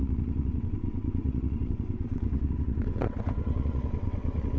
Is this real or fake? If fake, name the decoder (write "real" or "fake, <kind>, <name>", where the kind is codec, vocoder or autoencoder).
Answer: fake, vocoder, WaveNeXt